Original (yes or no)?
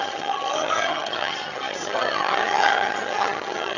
no